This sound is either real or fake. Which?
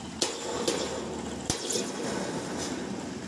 real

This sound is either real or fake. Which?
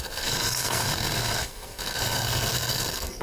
fake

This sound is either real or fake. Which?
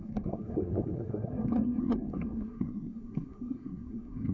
fake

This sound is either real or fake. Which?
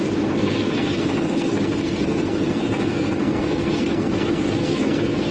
fake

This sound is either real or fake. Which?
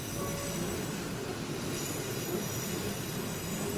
real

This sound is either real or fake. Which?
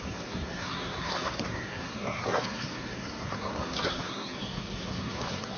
fake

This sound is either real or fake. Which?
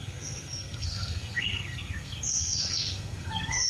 fake